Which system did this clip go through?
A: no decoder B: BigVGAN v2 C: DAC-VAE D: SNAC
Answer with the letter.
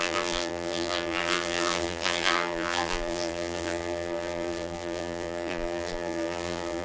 B